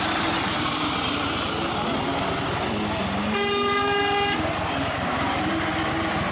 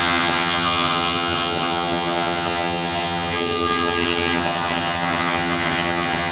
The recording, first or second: first